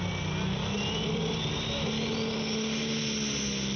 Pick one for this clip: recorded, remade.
recorded